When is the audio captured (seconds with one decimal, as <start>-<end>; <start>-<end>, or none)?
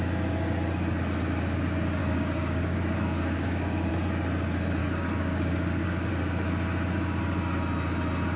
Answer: 0.0-2.0; 3.9-4.8; 6.1-8.4